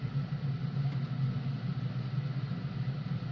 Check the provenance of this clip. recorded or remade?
recorded